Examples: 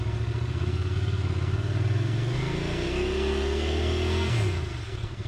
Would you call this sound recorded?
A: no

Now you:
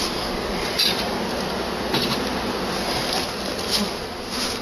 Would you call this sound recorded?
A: yes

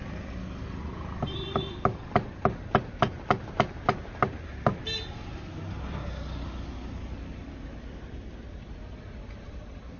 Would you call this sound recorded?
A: yes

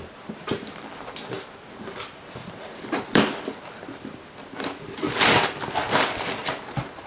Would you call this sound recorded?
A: yes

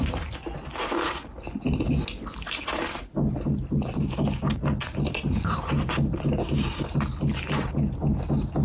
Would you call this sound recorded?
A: yes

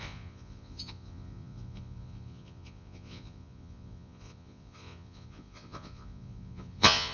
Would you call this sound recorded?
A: no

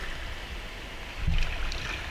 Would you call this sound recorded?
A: yes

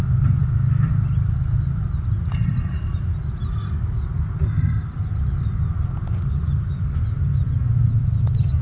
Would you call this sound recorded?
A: yes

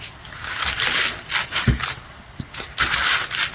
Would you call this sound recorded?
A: yes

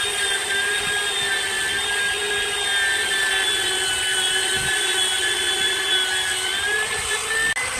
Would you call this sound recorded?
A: yes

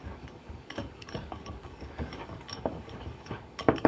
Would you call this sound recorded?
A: no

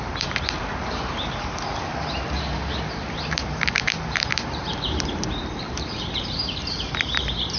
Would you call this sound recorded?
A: no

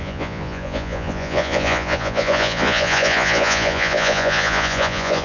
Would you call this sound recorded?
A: no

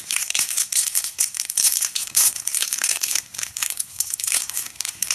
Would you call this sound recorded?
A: no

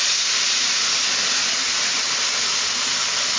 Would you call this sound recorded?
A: yes